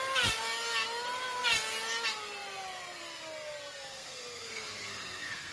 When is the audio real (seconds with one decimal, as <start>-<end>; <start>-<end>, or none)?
0.0-3.9